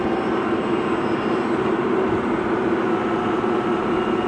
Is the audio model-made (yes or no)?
no